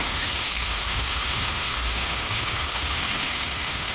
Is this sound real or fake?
fake